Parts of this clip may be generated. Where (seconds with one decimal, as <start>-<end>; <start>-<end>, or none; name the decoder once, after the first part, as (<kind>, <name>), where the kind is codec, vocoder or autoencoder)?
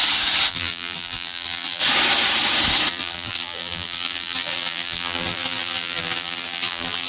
0.5-1.8 (vocoder, BigVGAN v2); 2.9-7.1